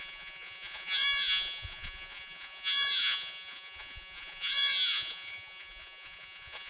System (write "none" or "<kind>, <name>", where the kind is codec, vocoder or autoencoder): vocoder, Vocos